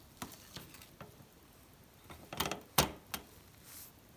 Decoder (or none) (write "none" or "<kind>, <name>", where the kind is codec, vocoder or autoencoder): none